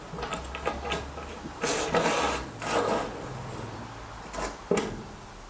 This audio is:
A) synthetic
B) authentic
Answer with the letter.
B